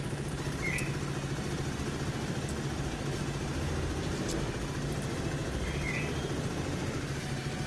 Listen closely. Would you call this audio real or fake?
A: real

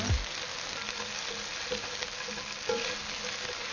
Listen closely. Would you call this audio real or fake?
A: real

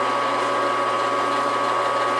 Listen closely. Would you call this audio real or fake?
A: real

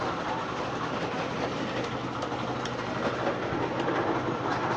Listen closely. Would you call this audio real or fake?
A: real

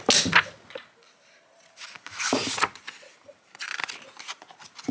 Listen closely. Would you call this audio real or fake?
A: real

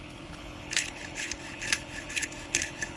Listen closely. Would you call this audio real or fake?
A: fake